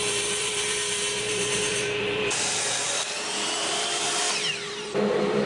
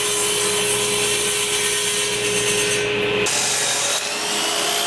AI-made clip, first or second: first